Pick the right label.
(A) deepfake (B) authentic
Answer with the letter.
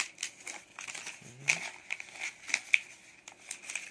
B